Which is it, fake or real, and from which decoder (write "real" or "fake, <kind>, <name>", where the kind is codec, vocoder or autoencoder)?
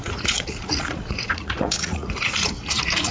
fake, vocoder, Vocos